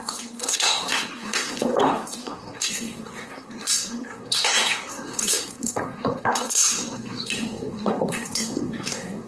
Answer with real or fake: fake